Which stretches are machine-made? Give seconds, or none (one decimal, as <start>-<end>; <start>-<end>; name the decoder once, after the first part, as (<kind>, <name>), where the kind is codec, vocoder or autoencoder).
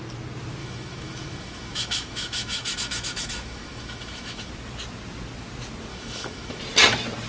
0.6-4.5 (autoencoder, DAC-VAE); 5.9-6.6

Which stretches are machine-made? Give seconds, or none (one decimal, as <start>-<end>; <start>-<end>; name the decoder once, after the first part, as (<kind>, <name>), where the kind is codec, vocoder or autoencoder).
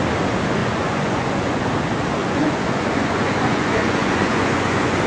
0.6-1.6 (vocoder, Vocos); 2.2-5.1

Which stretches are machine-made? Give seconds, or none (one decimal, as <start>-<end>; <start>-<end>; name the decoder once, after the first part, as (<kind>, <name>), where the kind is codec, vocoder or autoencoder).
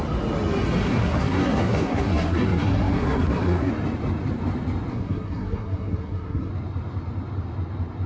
0.8-3.7 (codec, SNAC); 4.9-6.5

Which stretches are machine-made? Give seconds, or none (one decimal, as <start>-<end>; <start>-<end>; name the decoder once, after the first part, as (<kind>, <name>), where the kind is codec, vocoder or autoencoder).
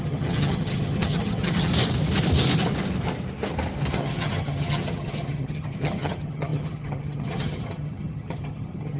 0.0-1.7 (vocoder, HiFi-GAN); 3.9-9.0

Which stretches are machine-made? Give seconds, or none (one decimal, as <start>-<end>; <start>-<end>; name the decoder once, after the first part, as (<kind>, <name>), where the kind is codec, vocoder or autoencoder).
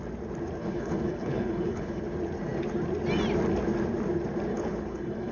0.6-2.0 (codec, HILCodec); 4.5-5.3